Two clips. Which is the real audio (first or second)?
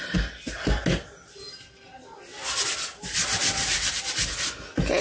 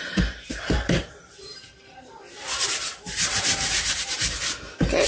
first